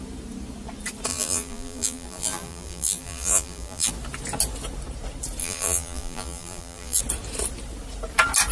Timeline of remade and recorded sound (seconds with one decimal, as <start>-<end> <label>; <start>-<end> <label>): 0.0-1.1 recorded; 1.1-3.9 remade; 3.9-5.4 recorded; 5.4-7.0 remade; 7.0-8.5 recorded